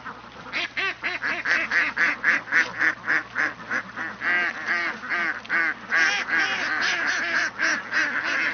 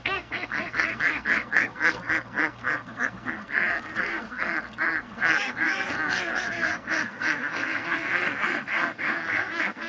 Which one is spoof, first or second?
second